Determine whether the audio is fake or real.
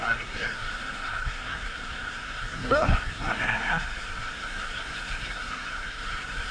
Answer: fake